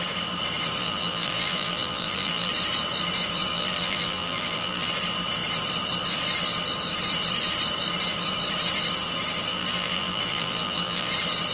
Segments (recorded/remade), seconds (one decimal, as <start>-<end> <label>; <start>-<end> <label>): 0.0-0.8 recorded; 0.8-2.5 remade; 2.5-3.5 recorded; 3.5-4.9 remade; 4.9-9.5 recorded; 9.5-11.1 remade; 11.1-11.5 recorded